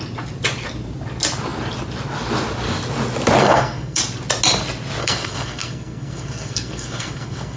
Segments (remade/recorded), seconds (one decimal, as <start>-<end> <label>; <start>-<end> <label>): 0.0-3.4 recorded; 3.4-4.0 remade; 4.0-5.0 recorded; 5.0-7.6 remade